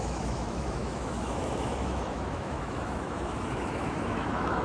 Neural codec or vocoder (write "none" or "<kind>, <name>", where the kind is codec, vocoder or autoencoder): autoencoder, DAC-VAE